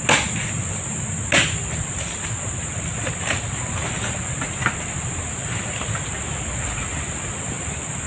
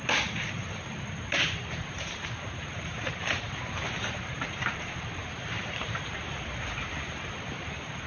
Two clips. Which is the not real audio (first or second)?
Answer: second